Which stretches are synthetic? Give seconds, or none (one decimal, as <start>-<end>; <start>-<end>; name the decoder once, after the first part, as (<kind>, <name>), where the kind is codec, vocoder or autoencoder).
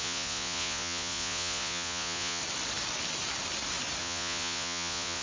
0.0-2.4 (vocoder, Vocos); 4.0-5.2